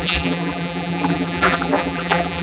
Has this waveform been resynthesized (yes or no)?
yes